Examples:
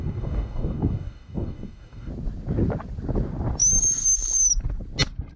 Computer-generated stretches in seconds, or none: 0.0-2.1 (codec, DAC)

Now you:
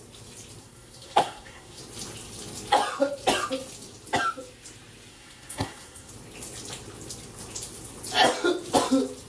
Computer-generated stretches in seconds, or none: 0.6-1.8 (codec, SNAC); 5.1-6.1

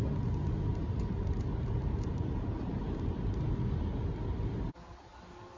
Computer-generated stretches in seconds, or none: 0.7-3.4 (vocoder, BigVGAN v2)

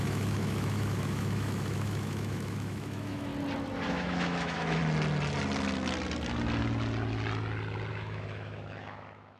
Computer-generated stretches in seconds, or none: 0.0-3.3 (autoencoder, DAC-VAE); 3.9-4.8; 7.9-9.4

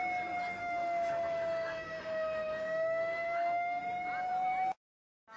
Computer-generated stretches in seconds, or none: 0.6-3.8 (autoencoder, DAC-VAE)